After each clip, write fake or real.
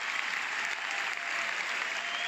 real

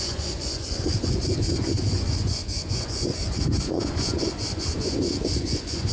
fake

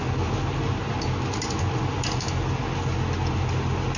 real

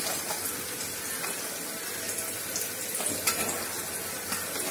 real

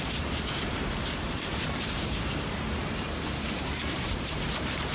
fake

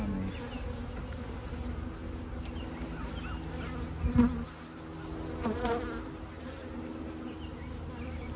real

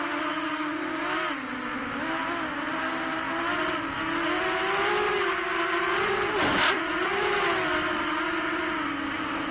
real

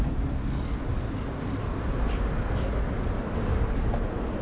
real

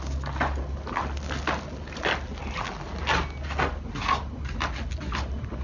real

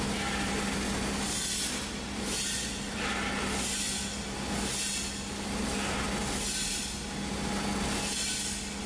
real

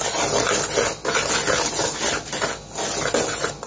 real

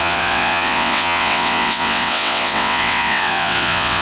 fake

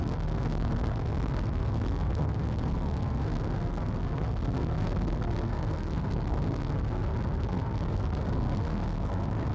fake